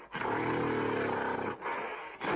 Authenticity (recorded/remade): recorded